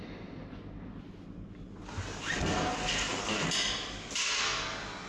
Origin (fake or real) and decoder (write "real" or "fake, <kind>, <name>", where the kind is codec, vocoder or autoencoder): real